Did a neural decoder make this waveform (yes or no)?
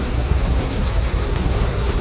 yes